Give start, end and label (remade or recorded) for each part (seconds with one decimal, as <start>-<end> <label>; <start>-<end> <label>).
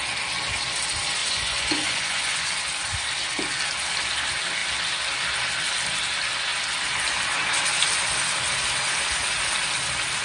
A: 0.0-1.2 recorded; 1.2-2.5 remade; 2.5-10.2 recorded